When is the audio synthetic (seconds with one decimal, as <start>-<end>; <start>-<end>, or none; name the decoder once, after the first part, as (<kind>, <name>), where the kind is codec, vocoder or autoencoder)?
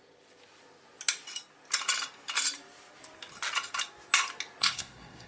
4.6-5.3 (codec, SNAC)